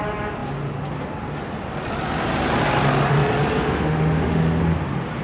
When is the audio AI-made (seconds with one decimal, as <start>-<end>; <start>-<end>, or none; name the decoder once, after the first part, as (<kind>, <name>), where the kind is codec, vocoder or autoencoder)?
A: 3.6-4.6 (autoencoder, DAC-VAE)